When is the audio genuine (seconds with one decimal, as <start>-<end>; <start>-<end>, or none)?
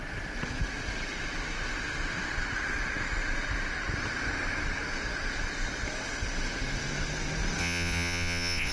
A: 0.0-7.6